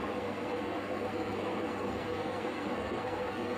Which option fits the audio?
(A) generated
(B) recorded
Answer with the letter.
A